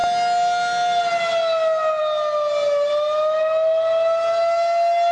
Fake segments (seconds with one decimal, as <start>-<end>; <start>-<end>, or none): none